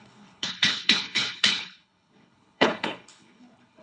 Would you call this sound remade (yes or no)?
yes